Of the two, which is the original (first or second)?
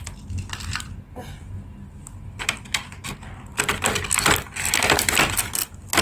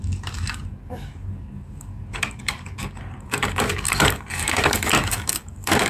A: first